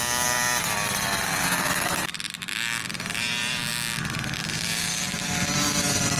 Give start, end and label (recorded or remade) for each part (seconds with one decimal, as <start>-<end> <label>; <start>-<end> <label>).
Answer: 0.0-5.0 recorded; 5.0-5.8 remade; 5.8-6.2 recorded